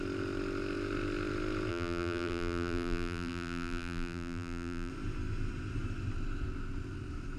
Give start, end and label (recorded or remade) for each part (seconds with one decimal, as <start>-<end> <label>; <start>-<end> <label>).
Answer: 0.0-1.7 recorded; 1.7-4.9 remade; 4.9-7.4 recorded